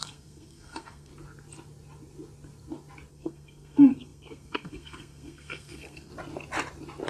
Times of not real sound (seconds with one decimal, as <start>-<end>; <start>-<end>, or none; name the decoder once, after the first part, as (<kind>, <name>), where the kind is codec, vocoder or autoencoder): 0.0-1.1 (codec, SNAC); 3.1-6.1